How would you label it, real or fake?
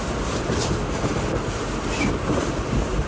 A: real